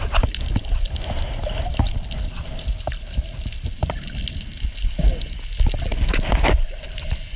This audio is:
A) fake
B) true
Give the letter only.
B